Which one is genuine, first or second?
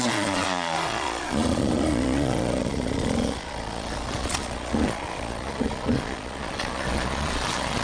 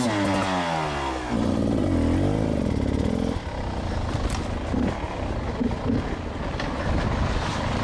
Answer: second